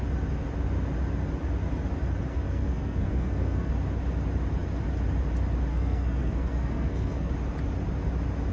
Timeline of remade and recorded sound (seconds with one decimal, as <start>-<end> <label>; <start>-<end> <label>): 0.0-2.3 recorded; 2.3-3.7 remade; 3.7-5.7 recorded; 5.7-7.3 remade; 7.3-8.5 recorded